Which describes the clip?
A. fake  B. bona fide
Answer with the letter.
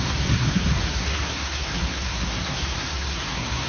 A